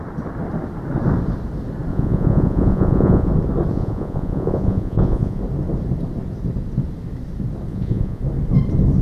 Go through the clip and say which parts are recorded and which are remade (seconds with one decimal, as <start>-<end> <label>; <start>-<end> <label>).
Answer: 0.0-1.9 recorded; 1.9-3.3 remade; 3.3-3.7 recorded; 3.7-5.4 remade; 5.4-7.7 recorded; 7.7-8.2 remade; 8.2-9.0 recorded